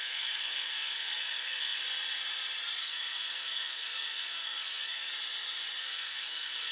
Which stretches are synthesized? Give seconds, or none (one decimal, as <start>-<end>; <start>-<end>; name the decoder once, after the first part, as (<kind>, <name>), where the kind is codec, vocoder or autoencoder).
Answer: 0.0-1.8 (codec, SNAC); 2.8-5.1; 5.8-6.7